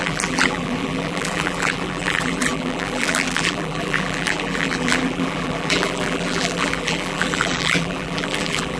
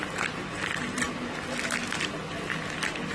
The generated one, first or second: first